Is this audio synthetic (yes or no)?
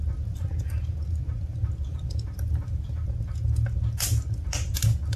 no